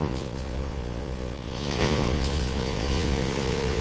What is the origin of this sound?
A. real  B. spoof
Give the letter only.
B